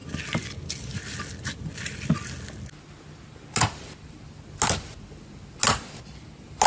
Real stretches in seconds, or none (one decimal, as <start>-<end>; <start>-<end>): 0.0-6.7